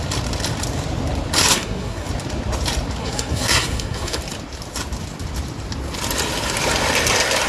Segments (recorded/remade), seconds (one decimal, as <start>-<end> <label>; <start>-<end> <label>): 0.0-1.5 recorded; 1.5-2.1 remade; 2.1-3.0 recorded; 3.0-4.2 remade; 4.2-7.5 recorded